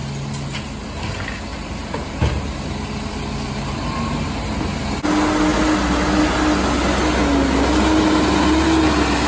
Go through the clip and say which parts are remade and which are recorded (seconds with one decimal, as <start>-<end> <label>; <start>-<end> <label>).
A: 0.0-1.5 recorded; 1.5-4.8 remade; 4.8-9.3 recorded